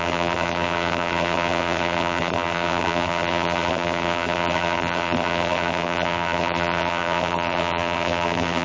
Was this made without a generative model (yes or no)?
no